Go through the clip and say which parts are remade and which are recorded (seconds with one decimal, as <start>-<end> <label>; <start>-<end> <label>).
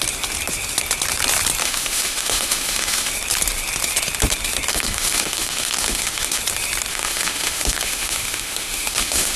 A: 0.0-1.6 recorded; 1.6-3.1 remade; 3.1-4.7 recorded; 4.7-6.4 remade; 6.4-6.9 recorded; 6.9-9.4 remade